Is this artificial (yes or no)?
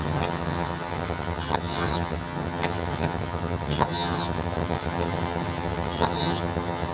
yes